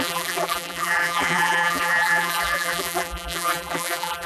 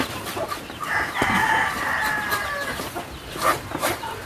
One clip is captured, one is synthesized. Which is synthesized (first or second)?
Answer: first